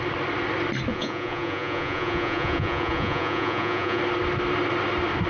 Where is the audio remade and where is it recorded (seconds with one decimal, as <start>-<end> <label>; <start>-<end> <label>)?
0.0-0.9 recorded; 0.9-4.0 remade; 4.0-5.3 recorded